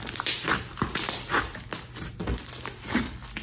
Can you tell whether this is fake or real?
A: real